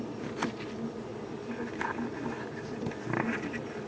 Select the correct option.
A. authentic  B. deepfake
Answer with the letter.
A